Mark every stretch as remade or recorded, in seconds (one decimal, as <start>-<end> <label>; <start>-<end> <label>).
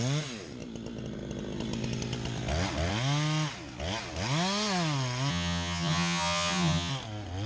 0.0-5.3 recorded; 5.3-6.9 remade; 6.9-7.5 recorded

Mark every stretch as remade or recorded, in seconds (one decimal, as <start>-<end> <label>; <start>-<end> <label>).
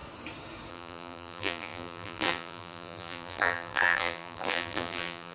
0.0-0.7 recorded; 0.7-5.3 remade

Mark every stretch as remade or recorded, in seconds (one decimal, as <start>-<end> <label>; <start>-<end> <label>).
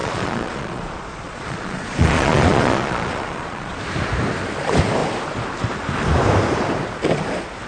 0.0-3.8 remade; 3.8-7.7 recorded